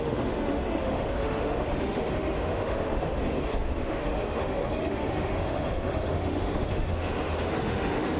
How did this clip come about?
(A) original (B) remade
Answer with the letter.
B